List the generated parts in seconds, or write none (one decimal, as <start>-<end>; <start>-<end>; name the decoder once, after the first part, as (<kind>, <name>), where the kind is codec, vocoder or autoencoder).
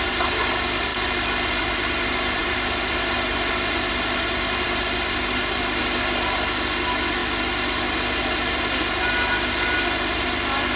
none